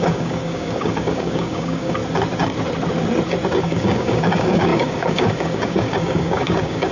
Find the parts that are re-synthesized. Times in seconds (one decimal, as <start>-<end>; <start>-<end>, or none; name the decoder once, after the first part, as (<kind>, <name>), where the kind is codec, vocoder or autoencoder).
0.0-2.0 (codec, DAC); 3.6-6.9